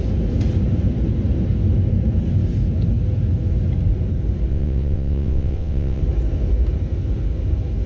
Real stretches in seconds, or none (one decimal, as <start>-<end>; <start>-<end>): 0.0-4.5; 6.0-7.9